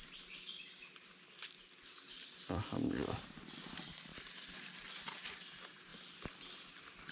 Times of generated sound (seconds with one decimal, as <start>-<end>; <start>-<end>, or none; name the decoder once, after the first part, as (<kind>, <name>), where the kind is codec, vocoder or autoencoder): none